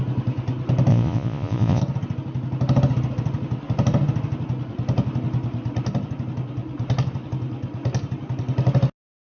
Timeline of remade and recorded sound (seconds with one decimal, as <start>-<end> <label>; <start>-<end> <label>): 0.0-0.9 recorded; 0.9-1.8 remade; 1.8-9.4 recorded